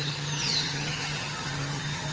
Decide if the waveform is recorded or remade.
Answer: remade